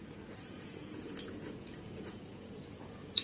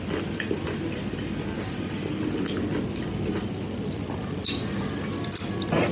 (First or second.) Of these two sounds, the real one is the second